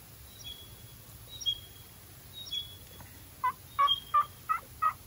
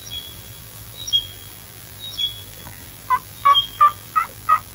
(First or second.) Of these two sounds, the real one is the first